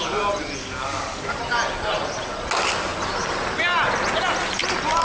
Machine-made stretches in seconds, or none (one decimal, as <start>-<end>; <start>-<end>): 0.6-1.4